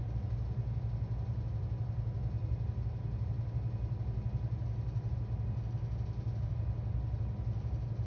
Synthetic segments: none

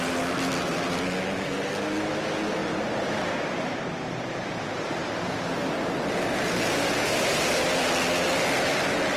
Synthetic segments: 2.6-7.5 (vocoder, BigVGAN v2)

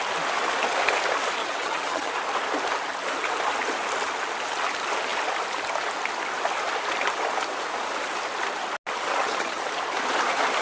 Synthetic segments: 1.4-2.1 (vocoder, HiFi-GAN); 9.1-9.6